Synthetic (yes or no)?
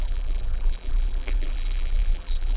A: yes